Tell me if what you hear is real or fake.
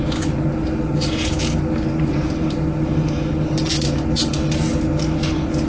real